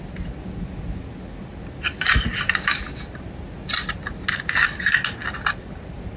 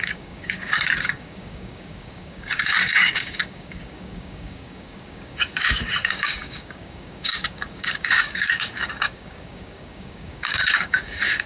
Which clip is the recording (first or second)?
first